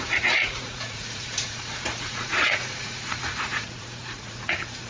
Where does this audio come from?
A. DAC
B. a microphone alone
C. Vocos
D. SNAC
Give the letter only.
C